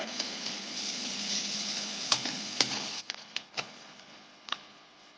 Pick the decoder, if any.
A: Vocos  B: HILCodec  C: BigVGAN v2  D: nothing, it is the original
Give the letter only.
B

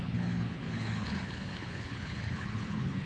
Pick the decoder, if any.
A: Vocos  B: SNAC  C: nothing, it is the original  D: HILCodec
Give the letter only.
D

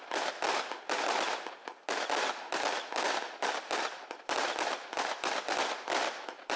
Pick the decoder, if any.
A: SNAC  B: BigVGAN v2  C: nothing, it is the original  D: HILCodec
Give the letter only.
C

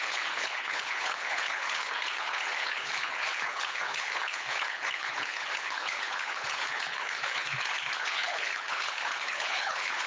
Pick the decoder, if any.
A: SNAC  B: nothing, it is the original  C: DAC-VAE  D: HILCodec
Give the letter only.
D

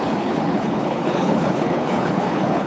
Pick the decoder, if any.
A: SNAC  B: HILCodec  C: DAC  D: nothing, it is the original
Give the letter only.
B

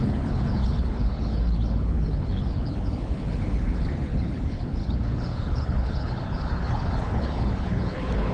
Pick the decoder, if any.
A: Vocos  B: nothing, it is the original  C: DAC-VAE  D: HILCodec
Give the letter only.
D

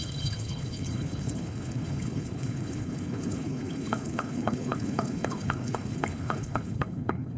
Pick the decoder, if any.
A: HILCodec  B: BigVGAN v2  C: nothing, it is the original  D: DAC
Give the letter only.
A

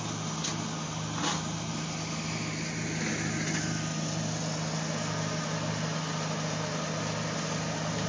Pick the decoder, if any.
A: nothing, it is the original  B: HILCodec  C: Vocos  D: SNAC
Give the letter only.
A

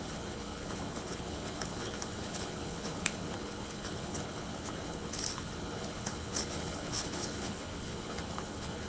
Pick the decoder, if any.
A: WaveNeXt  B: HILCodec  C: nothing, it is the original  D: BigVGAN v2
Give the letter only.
B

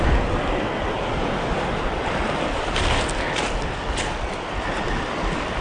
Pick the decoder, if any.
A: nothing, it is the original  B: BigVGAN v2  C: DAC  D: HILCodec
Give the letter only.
A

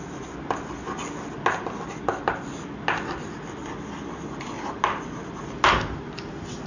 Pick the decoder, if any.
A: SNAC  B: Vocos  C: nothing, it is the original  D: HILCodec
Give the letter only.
C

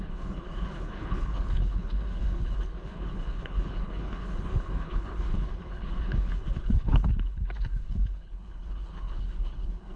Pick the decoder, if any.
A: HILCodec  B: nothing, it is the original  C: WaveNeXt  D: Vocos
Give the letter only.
A